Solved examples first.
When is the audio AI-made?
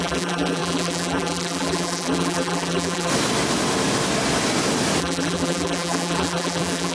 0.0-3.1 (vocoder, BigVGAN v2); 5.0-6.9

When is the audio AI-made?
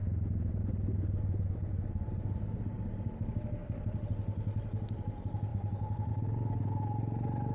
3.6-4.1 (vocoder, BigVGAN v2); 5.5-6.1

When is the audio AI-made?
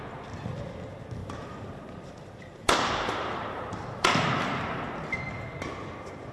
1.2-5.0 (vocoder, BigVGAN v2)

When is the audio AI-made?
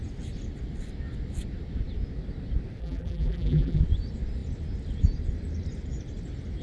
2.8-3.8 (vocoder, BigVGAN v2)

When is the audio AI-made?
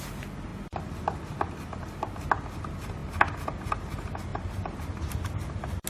4.3-4.8 (vocoder, BigVGAN v2)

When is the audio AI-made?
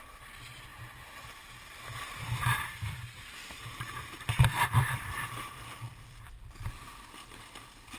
0.7-5.5 (vocoder, BigVGAN v2)